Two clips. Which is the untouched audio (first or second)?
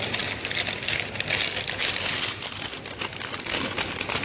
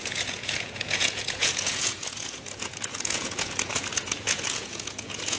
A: first